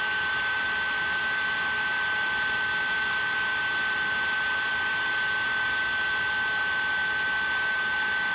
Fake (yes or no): no